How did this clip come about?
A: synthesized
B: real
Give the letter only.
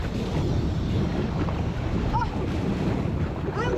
B